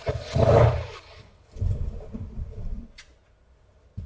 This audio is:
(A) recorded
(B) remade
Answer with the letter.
A